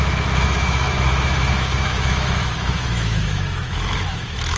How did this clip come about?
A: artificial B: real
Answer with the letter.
A